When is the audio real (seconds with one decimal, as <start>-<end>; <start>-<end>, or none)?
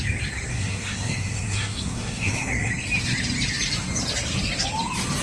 0.0-0.5; 2.7-5.2